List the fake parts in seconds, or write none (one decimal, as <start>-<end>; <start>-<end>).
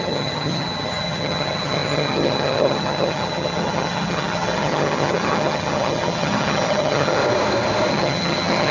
0.0-7.2; 7.9-8.7